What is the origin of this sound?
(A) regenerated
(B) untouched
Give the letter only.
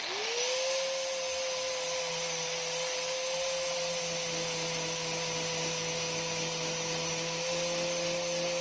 B